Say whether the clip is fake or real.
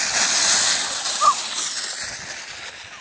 real